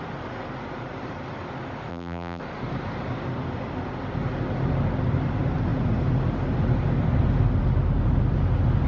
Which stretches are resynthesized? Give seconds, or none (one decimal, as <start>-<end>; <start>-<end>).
1.9-2.4